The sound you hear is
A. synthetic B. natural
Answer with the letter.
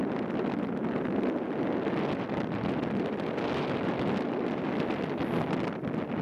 B